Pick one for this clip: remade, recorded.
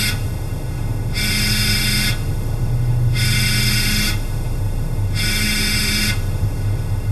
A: remade